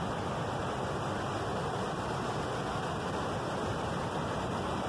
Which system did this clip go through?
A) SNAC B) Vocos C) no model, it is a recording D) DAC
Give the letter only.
C